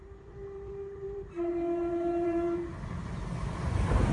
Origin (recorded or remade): remade